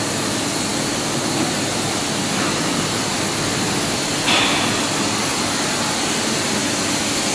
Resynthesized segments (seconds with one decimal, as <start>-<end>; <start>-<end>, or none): none